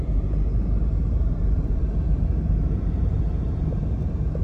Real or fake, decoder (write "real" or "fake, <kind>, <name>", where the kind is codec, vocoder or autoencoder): fake, vocoder, BigVGAN v2